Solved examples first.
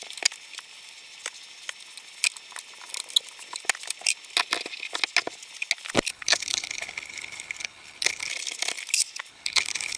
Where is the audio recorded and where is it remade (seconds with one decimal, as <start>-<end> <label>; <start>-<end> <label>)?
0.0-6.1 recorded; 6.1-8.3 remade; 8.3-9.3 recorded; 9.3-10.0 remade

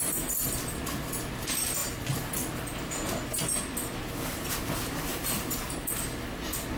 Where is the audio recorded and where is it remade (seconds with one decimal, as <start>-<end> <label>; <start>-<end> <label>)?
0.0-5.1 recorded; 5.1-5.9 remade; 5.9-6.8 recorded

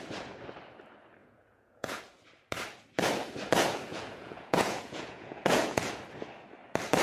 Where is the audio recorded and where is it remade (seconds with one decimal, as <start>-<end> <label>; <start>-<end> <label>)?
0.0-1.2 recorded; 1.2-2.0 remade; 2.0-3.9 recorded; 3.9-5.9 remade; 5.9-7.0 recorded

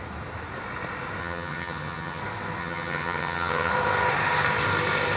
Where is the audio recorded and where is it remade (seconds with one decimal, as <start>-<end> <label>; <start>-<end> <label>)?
0.0-1.2 recorded; 1.2-2.2 remade; 2.2-2.6 recorded; 2.6-3.7 remade; 3.7-5.2 recorded

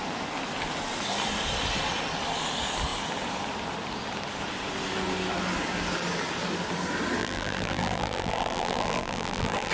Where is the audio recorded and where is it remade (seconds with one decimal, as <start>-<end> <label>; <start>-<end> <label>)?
0.0-7.2 recorded; 7.2-9.7 remade

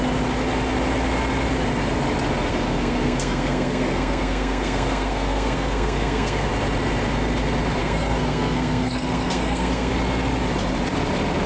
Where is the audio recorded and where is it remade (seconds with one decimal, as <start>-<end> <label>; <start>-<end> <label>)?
0.0-2.5 recorded; 2.5-6.5 remade; 6.5-7.8 recorded; 7.8-9.9 remade; 9.9-11.5 recorded

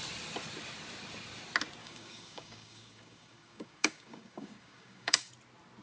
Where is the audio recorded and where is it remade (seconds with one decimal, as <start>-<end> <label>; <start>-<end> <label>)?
0.0-1.8 recorded; 1.8-5.3 remade; 5.3-5.8 recorded